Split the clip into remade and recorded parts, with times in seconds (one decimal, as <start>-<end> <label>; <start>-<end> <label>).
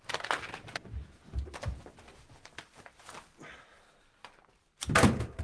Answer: 0.0-5.4 recorded